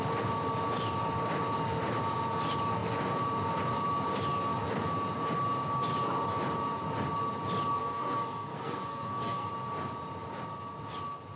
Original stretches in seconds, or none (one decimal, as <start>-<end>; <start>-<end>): 0.0-7.8; 9.5-11.4